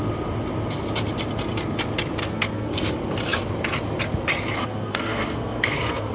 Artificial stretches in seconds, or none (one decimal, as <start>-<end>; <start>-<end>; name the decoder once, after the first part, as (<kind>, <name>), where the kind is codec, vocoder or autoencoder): 2.2-2.9 (codec, SNAC); 4.6-6.1